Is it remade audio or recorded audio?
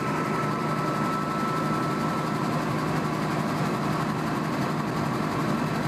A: recorded